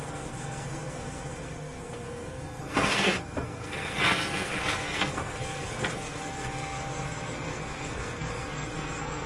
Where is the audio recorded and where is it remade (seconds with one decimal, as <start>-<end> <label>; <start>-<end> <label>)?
0.0-9.3 remade